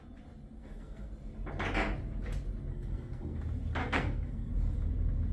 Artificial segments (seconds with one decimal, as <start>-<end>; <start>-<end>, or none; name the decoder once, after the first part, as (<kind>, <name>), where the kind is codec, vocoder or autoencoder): 0.6-1.1 (codec, SNAC); 2.7-3.4; 3.8-4.5